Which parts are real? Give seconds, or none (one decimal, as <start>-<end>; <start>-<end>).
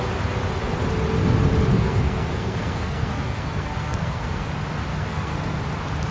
0.0-1.7; 4.5-4.9; 5.6-6.1